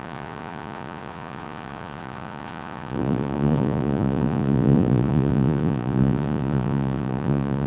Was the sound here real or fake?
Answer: fake